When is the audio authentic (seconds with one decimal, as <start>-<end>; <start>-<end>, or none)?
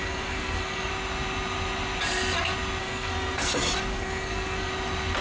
0.9-2.8; 3.5-3.9; 4.7-5.2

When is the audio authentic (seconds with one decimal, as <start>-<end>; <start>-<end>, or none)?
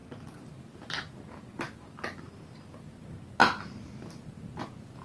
0.0-5.0